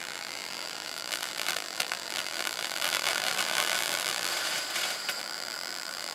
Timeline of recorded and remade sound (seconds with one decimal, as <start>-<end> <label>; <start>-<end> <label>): 0.0-4.3 remade; 4.3-5.2 recorded; 5.2-6.1 remade